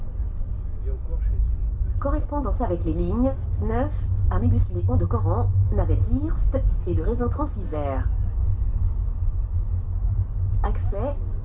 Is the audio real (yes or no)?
yes